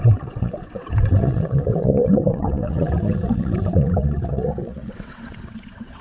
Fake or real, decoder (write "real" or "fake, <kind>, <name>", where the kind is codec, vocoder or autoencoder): fake, vocoder, WaveNeXt